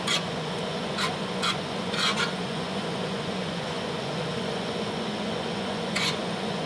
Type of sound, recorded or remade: remade